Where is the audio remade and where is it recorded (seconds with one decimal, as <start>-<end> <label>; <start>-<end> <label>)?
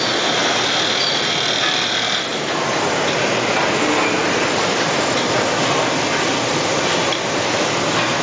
0.0-2.3 recorded; 2.3-3.0 remade; 3.0-4.2 recorded; 4.2-5.3 remade; 5.3-8.2 recorded